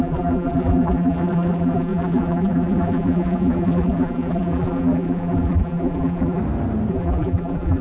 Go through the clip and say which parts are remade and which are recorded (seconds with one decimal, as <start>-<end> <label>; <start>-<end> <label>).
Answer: 0.0-6.4 remade; 6.4-6.9 recorded; 6.9-7.8 remade